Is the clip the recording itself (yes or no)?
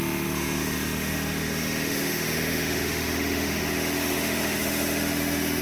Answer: no